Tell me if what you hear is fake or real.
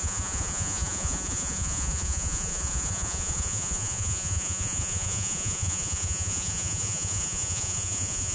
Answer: fake